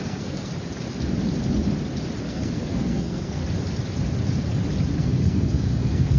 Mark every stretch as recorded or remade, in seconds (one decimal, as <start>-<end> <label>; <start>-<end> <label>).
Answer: 0.0-0.5 remade; 0.5-2.2 recorded; 2.2-3.4 remade; 3.4-5.0 recorded; 5.0-6.2 remade